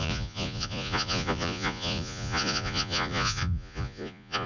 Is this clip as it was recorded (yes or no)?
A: no